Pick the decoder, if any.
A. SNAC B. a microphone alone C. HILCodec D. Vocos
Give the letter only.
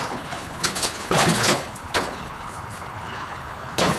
C